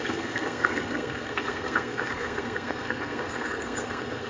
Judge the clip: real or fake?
fake